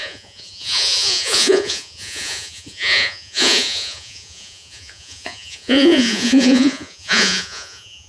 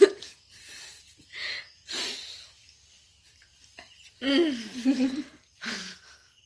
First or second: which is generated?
first